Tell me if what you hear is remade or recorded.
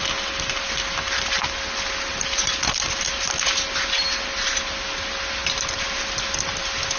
recorded